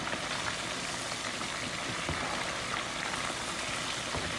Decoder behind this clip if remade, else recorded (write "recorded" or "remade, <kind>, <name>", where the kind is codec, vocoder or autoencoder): recorded